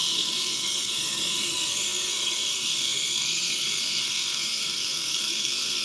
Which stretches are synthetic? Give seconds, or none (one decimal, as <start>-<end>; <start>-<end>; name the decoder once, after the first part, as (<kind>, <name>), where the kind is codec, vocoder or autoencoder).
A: 0.0-5.8 (codec, SNAC)